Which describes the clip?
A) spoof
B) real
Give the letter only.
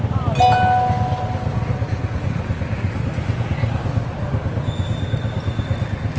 B